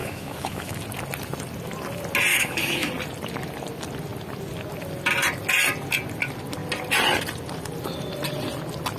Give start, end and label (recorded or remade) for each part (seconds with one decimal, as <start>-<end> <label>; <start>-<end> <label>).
0.0-0.8 remade; 0.8-2.3 recorded; 2.3-2.9 remade; 2.9-9.0 recorded